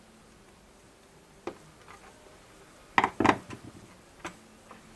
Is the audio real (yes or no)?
yes